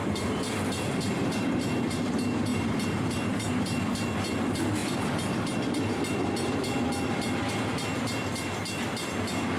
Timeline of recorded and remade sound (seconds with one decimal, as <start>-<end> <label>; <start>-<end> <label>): 0.0-1.6 remade; 1.6-2.5 recorded; 2.5-3.5 remade; 3.5-4.8 recorded; 4.8-5.8 remade; 5.8-9.6 recorded